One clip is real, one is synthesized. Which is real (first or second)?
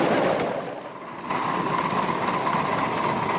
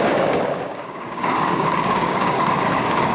first